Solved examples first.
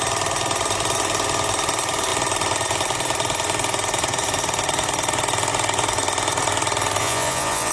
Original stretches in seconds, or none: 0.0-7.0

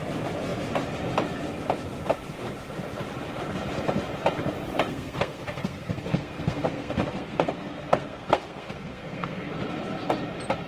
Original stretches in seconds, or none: 0.0-4.9; 9.5-10.7

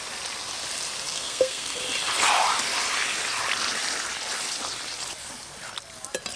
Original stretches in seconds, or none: 0.0-1.1; 1.8-6.4

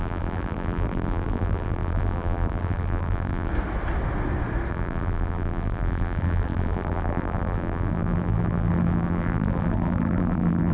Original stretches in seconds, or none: 3.5-4.7